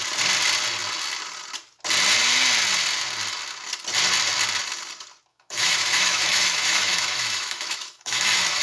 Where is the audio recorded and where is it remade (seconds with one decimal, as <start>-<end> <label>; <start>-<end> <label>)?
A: 0.0-5.3 recorded; 5.3-8.6 remade

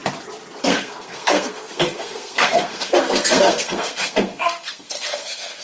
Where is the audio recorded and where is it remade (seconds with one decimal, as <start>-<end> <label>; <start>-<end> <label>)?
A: 0.0-0.6 recorded; 0.6-5.6 remade

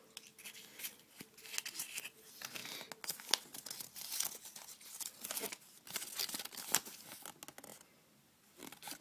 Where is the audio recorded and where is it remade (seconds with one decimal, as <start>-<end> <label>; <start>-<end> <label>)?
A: 0.0-9.0 recorded